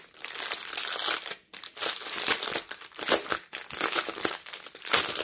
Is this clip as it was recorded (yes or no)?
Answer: yes